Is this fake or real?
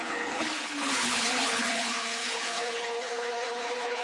fake